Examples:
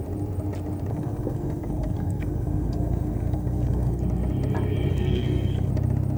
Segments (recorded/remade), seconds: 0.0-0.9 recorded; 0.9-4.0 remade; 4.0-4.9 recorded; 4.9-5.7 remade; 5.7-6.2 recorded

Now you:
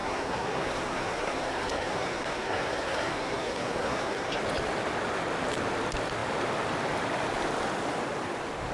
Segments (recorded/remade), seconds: 0.0-4.4 remade; 4.4-8.7 recorded

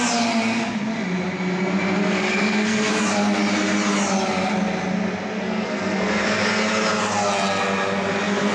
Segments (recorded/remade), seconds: 0.0-2.0 recorded; 2.0-2.9 remade; 2.9-5.4 recorded; 5.4-6.4 remade; 6.4-8.5 recorded

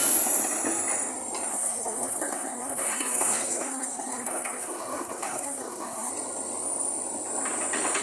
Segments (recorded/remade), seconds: 0.0-1.5 recorded; 1.5-6.1 remade; 6.1-8.0 recorded

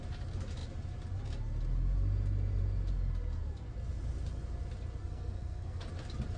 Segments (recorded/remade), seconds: 0.0-5.0 recorded; 5.0-5.9 remade; 5.9-6.4 recorded

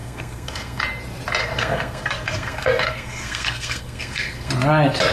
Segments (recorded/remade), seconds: 0.0-0.8 remade; 0.8-1.4 recorded; 1.4-4.5 remade; 4.5-5.1 recorded

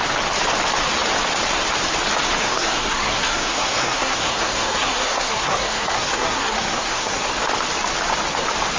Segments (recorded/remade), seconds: 0.0-2.4 recorded; 2.4-7.3 remade; 7.3-8.8 recorded